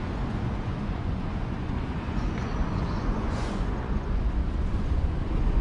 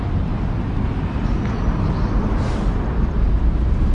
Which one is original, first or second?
second